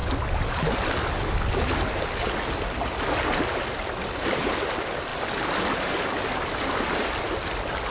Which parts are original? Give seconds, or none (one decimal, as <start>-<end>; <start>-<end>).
0.0-7.9